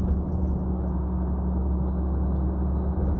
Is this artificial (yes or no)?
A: no